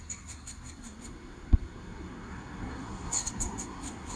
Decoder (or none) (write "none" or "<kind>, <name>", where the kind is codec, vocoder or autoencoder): codec, SNAC